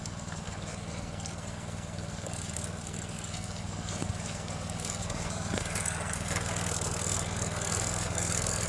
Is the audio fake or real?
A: fake